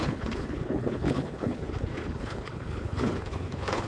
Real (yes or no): no